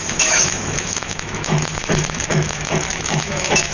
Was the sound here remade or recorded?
remade